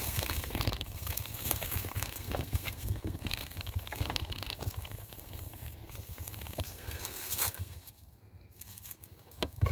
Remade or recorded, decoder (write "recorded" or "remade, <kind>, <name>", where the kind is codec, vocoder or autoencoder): remade, codec, SNAC